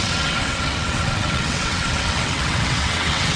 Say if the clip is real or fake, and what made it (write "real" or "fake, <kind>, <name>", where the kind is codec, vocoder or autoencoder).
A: fake, vocoder, WaveNeXt